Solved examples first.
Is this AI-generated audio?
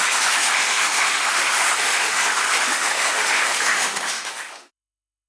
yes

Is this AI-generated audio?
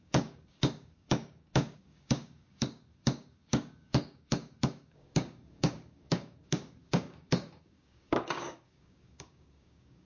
yes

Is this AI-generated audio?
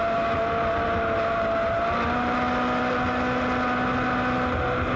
no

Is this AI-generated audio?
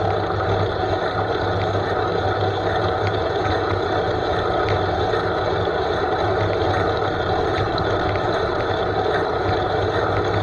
no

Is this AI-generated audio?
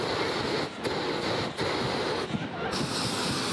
yes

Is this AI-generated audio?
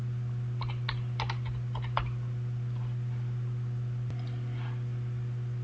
no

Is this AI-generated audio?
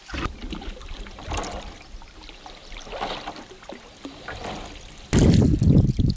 no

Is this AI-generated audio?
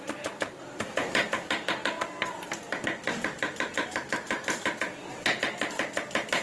no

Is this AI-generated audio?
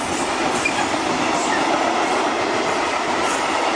no